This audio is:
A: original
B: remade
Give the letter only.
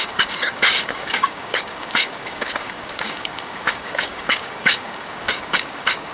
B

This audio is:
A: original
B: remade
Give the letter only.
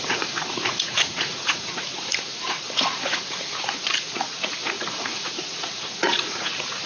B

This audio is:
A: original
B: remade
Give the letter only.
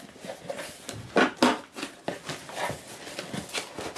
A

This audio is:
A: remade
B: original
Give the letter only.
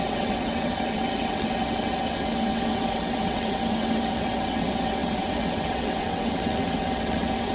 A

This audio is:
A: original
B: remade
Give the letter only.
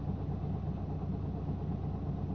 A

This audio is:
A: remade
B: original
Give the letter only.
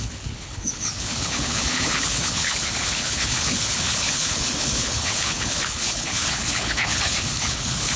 A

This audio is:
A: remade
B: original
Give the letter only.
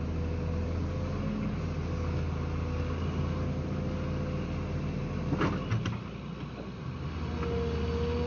B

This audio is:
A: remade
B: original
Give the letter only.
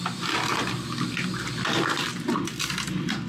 B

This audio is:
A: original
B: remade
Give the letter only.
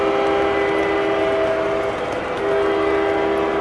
A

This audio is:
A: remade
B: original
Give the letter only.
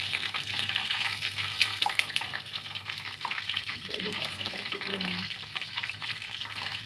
A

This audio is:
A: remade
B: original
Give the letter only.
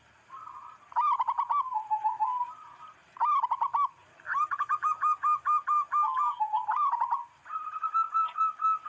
B